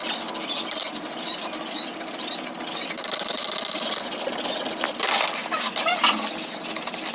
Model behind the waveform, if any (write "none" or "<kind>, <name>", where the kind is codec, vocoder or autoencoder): none